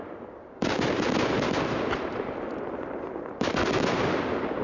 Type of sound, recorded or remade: recorded